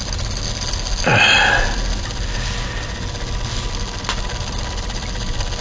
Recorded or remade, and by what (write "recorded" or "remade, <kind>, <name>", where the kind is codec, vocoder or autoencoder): recorded